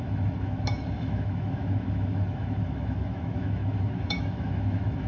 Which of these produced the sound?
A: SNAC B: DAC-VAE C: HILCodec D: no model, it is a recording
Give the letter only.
B